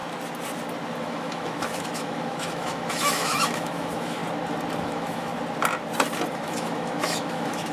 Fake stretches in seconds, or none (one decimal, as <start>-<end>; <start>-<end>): 1.0-4.2; 4.8-5.3; 6.3-7.7